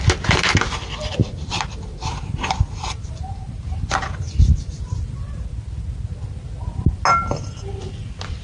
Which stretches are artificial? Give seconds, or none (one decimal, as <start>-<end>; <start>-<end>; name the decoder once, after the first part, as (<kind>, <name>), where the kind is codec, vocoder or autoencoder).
1.2-5.1 (vocoder, BigVGAN v2)